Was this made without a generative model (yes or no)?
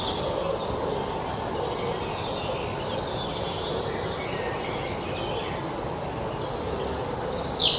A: yes